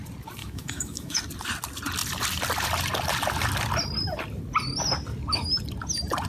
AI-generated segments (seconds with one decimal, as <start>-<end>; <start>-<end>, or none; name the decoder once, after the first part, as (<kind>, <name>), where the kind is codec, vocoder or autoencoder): 0.4-1.2 (autoencoder, DAC-VAE)